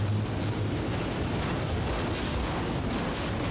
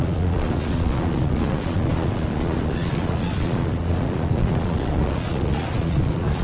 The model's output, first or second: second